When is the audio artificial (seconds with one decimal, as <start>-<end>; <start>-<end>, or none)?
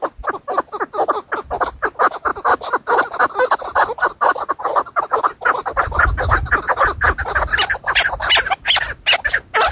none